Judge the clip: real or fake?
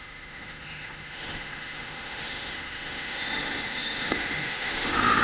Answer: fake